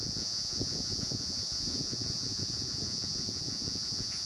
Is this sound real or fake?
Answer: fake